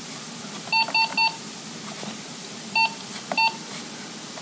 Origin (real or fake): real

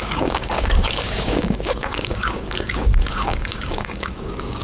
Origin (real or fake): fake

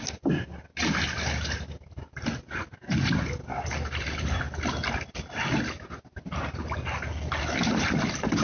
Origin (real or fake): real